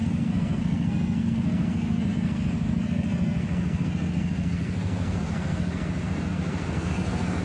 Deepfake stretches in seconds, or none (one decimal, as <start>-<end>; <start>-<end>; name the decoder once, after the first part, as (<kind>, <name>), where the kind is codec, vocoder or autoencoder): 0.0-7.4 (codec, SNAC)